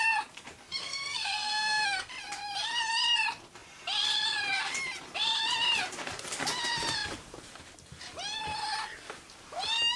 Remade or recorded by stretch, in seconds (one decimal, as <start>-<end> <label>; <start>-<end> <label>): 0.0-0.8 recorded; 0.8-2.1 remade; 2.1-10.0 recorded